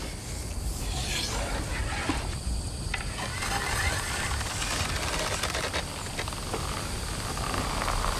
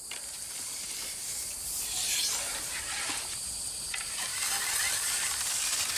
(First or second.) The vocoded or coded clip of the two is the second